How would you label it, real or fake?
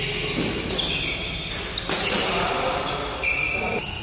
real